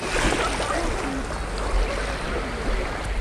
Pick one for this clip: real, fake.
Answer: real